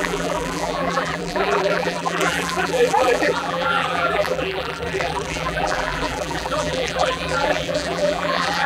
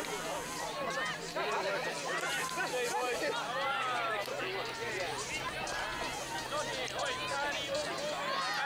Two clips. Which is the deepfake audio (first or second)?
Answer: first